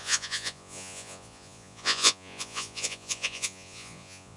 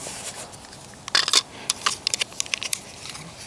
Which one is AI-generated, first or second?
first